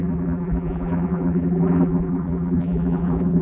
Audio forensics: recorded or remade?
remade